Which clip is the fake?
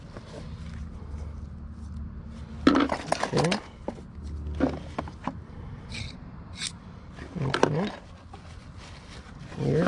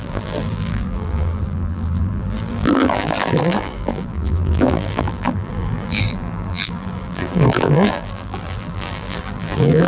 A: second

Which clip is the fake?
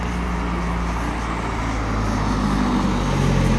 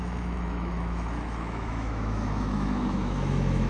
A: second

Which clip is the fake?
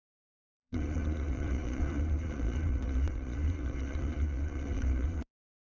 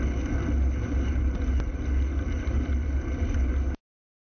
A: first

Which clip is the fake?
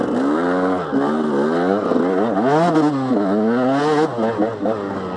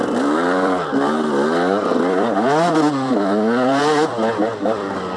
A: second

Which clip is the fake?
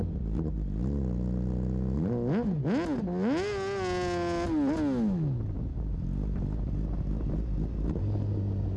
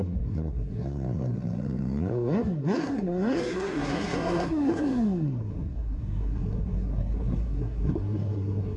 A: second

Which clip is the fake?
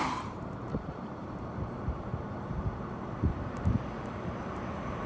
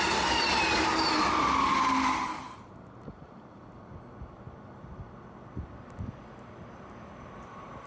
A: first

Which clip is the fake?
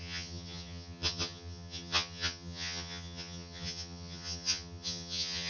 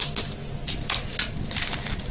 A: first